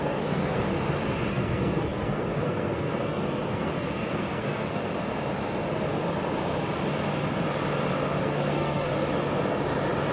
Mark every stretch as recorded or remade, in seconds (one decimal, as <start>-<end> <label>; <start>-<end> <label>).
0.0-0.7 remade; 0.7-1.3 recorded; 1.3-4.9 remade; 4.9-8.2 recorded; 8.2-8.9 remade; 8.9-10.1 recorded